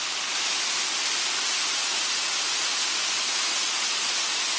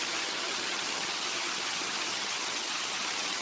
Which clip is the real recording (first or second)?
first